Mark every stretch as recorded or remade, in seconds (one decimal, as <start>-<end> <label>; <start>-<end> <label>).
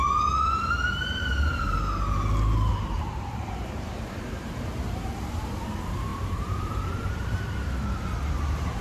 0.0-2.7 recorded; 2.7-3.5 remade; 3.5-6.1 recorded; 6.1-7.1 remade; 7.1-8.8 recorded